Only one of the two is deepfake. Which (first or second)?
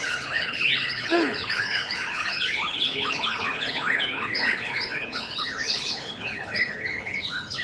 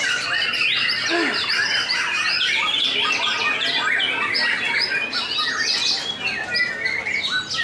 first